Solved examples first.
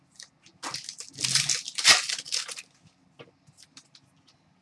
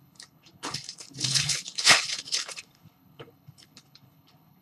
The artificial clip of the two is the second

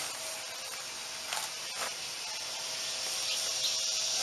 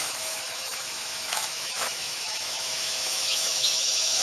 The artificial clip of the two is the second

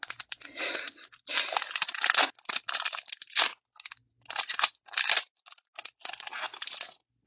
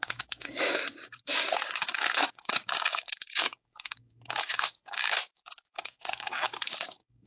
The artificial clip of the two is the second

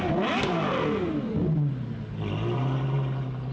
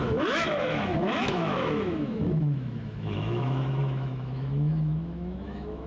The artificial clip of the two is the second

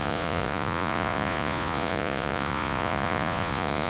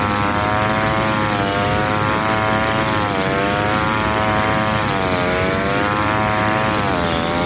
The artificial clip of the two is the first